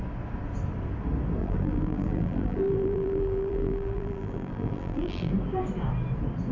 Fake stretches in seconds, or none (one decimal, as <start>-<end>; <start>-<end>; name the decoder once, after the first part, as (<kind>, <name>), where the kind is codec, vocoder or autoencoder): 1.4-5.3 (vocoder, BigVGAN v2)

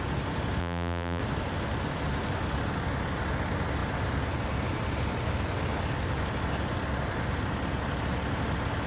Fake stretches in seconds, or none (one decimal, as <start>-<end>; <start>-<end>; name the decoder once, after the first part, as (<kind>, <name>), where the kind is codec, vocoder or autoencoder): 0.6-1.2 (vocoder, BigVGAN v2)

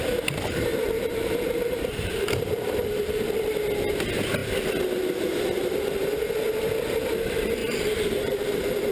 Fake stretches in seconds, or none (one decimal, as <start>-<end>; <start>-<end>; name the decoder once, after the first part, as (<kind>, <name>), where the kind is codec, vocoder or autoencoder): 0.7-3.5 (vocoder, BigVGAN v2); 7.6-8.9

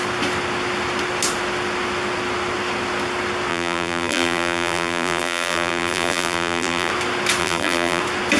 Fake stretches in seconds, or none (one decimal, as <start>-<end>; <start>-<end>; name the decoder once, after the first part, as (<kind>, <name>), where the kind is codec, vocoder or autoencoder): 3.5-6.9 (vocoder, BigVGAN v2); 7.4-8.0

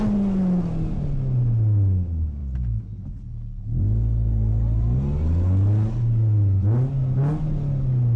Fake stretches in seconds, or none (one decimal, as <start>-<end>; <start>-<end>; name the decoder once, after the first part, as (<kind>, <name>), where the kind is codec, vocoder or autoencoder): none